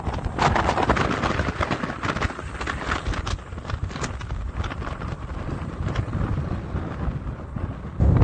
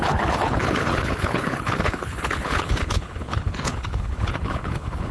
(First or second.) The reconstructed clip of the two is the second